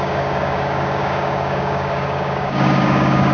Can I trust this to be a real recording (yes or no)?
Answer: no